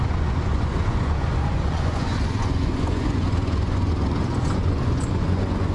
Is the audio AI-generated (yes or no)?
yes